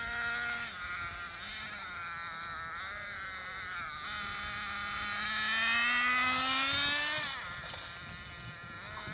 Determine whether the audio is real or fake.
real